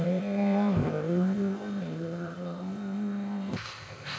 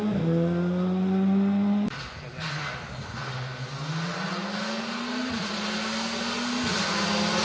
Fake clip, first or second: first